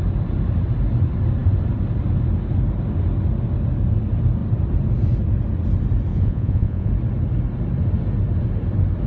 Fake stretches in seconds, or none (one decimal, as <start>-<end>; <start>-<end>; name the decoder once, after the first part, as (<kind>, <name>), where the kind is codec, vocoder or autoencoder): 6.1-6.9 (vocoder, Vocos)